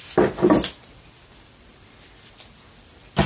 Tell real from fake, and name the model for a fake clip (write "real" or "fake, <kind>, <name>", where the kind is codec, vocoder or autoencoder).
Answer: real